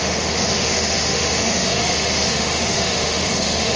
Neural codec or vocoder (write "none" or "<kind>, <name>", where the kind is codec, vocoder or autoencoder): autoencoder, DAC-VAE